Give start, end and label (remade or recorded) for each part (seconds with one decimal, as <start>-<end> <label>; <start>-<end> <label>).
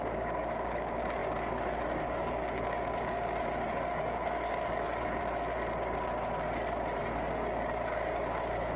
0.0-5.2 remade; 5.2-7.0 recorded; 7.0-8.8 remade